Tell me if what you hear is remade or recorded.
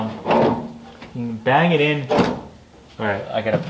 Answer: recorded